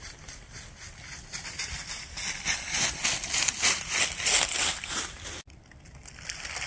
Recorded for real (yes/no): yes